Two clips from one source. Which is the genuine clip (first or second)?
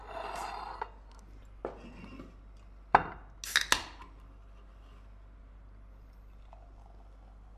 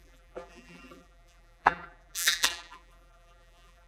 first